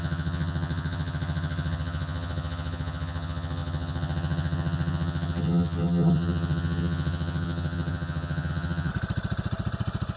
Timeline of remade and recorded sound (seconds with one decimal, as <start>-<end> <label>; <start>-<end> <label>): 0.0-8.9 remade; 8.9-10.2 recorded